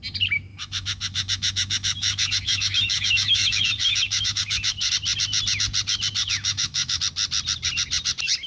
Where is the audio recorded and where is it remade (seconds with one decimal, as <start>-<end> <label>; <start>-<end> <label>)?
0.0-0.5 recorded; 0.5-4.9 remade; 4.9-6.2 recorded; 6.2-7.0 remade; 7.0-8.5 recorded